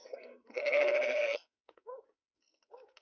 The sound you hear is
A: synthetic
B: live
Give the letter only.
A